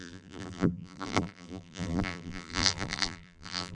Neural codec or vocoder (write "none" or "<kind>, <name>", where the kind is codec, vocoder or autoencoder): vocoder, BigVGAN v2